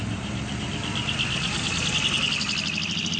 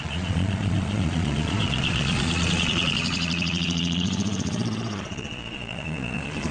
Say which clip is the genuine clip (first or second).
first